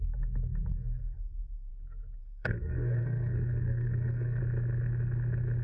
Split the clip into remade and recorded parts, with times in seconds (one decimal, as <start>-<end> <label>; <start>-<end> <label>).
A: 0.0-0.7 recorded; 0.7-1.7 remade; 1.7-2.2 recorded; 2.2-4.4 remade; 4.4-5.6 recorded